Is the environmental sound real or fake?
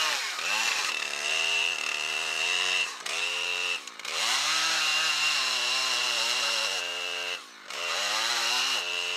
fake